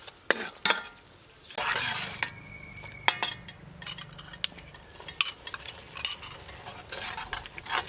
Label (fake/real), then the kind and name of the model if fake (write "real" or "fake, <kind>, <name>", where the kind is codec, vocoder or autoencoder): real